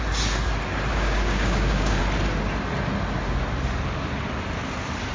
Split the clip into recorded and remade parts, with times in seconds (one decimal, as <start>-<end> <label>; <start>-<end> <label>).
0.0-0.9 recorded; 0.9-2.0 remade; 2.0-5.1 recorded